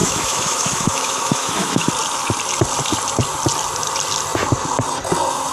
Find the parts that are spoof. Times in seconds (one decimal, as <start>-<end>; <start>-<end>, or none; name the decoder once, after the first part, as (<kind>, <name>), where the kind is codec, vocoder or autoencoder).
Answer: 0.0-1.9 (autoencoder, DAC-VAE)